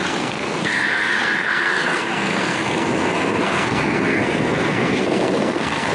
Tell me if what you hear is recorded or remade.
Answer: remade